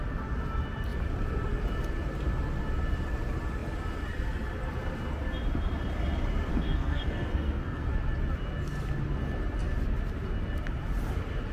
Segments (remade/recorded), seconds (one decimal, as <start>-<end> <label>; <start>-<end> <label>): 0.0-6.5 recorded; 6.5-7.9 remade; 7.9-11.5 recorded